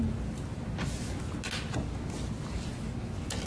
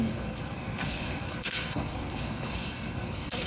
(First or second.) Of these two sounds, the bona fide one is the first